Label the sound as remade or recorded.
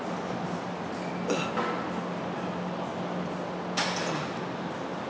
recorded